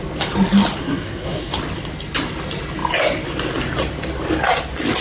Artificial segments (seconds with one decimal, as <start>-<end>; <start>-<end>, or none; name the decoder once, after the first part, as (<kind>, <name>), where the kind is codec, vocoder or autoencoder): 0.8-1.6 (codec, SNAC)